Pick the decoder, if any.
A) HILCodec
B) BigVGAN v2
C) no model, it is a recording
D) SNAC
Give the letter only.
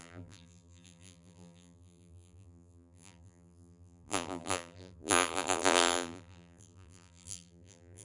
B